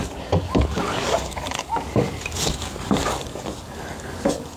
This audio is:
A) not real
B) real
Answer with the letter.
A